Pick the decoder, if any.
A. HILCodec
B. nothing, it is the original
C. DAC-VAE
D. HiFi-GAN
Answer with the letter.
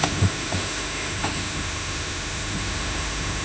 C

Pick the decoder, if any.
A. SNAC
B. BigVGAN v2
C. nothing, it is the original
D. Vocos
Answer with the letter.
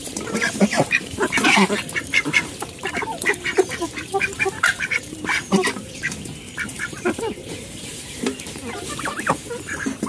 B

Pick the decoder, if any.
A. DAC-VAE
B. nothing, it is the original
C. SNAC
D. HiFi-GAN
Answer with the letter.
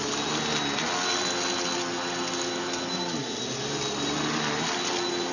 B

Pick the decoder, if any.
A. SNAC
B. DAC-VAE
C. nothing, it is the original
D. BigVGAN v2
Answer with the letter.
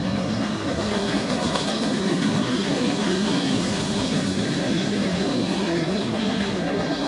A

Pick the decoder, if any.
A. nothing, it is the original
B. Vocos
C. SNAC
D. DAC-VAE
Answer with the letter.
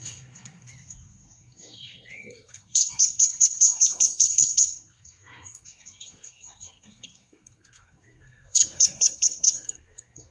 C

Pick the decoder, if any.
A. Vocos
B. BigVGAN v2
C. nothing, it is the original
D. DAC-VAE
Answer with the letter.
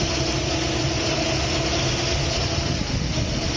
C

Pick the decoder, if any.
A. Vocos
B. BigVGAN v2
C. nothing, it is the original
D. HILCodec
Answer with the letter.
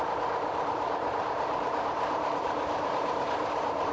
B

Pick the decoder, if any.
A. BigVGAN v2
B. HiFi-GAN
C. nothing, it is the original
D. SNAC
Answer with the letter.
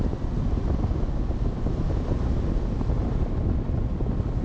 C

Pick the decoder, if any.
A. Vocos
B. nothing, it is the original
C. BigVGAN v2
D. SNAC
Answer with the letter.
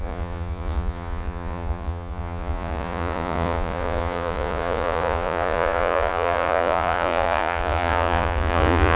A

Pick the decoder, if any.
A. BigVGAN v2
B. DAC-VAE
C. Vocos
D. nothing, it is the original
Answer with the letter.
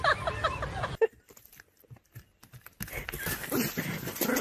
D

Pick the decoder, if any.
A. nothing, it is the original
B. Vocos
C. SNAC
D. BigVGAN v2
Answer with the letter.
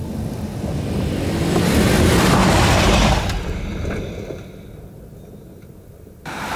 A